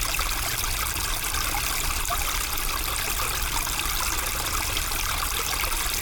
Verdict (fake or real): real